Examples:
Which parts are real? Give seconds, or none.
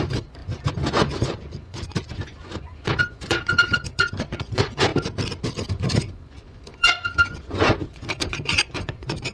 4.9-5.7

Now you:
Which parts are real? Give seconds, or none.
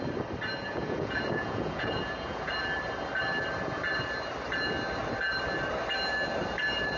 0.0-0.6; 2.5-7.0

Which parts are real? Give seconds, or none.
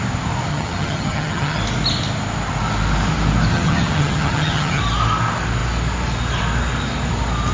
0.0-0.5; 1.6-3.5; 4.8-7.5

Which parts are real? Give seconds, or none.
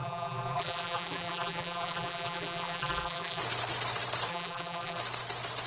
3.4-4.3; 5.0-5.7